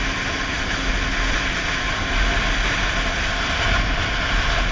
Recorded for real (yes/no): yes